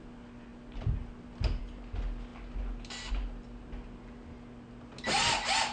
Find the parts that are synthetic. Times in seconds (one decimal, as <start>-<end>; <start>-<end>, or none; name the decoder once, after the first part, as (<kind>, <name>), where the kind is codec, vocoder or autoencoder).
none